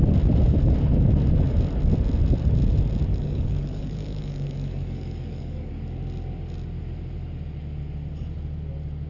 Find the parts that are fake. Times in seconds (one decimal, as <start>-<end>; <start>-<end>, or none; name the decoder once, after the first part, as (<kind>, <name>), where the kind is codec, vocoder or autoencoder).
3.1-5.7 (codec, DAC)